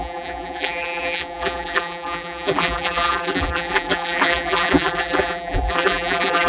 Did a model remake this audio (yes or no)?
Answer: yes